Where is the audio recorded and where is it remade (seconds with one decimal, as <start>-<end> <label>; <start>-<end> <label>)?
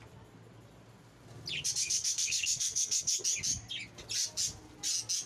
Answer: 0.0-1.8 recorded; 1.8-3.2 remade; 3.2-5.3 recorded